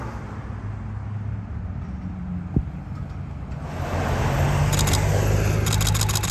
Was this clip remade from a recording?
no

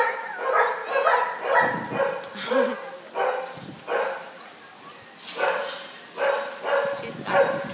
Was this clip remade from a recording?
no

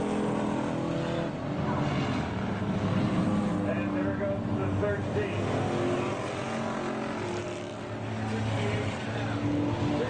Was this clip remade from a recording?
no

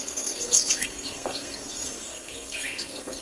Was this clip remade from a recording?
yes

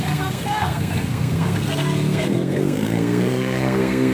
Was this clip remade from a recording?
yes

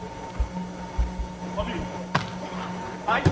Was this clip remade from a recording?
no